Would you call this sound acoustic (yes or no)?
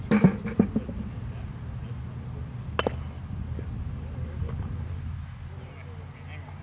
yes